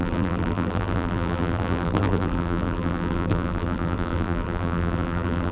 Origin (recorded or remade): remade